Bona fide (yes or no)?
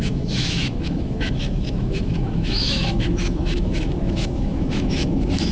no